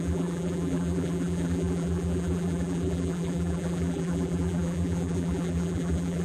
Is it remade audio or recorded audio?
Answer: remade